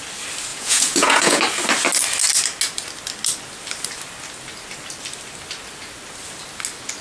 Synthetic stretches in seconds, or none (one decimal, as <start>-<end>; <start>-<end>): 0.5-1.4